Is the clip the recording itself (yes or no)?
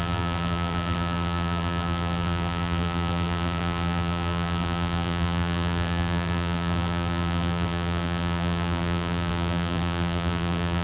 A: no